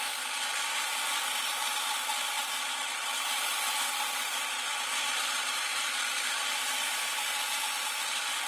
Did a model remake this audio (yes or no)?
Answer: no